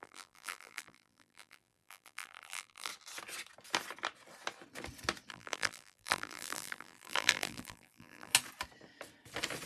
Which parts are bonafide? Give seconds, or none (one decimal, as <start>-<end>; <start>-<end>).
2.9-5.3; 8.3-9.7